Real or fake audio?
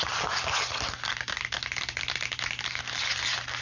real